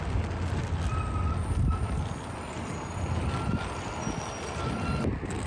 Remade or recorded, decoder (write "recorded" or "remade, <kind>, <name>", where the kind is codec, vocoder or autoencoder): recorded